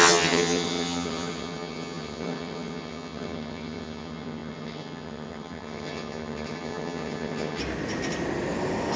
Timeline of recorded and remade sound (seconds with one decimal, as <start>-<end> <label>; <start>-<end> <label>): 0.0-7.6 remade; 7.6-9.0 recorded